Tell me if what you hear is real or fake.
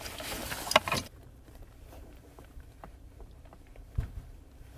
fake